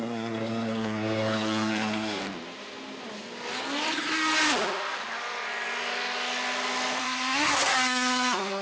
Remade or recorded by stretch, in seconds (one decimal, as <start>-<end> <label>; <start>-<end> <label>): 0.0-2.2 remade; 2.2-7.0 recorded; 7.0-8.6 remade